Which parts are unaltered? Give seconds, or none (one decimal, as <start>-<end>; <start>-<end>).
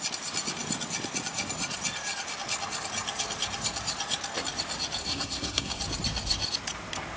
0.0-5.0; 5.8-7.2